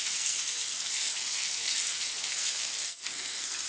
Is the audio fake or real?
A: fake